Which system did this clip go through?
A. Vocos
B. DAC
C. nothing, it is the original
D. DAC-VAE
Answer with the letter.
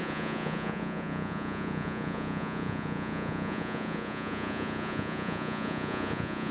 A